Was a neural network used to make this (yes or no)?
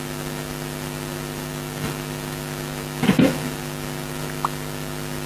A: no